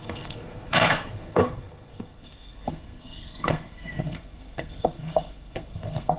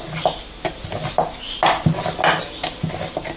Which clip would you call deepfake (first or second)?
first